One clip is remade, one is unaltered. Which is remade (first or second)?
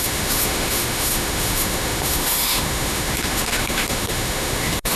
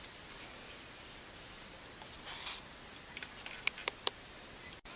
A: first